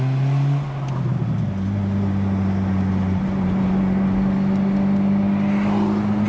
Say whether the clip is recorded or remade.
recorded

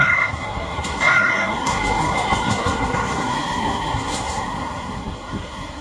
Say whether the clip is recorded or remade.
remade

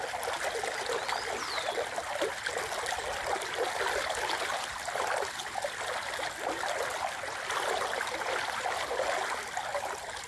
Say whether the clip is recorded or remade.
recorded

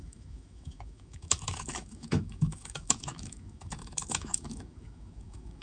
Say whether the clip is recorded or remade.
remade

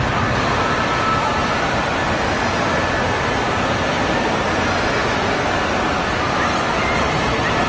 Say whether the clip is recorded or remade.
recorded